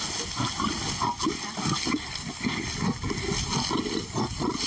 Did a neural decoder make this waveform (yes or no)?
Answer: no